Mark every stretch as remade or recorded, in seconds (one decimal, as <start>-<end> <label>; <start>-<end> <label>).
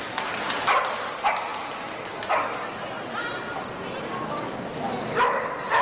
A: 0.0-5.8 recorded